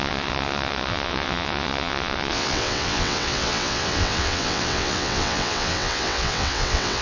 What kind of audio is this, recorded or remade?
remade